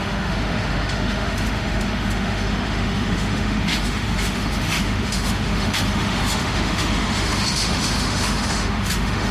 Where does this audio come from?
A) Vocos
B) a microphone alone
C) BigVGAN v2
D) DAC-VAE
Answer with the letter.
D